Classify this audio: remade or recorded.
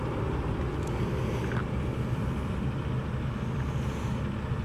recorded